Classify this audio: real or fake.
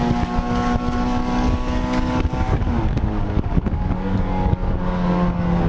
fake